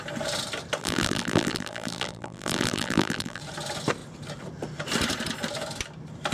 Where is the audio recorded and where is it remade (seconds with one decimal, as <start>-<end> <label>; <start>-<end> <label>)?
0.0-0.8 recorded; 0.8-3.4 remade; 3.4-6.3 recorded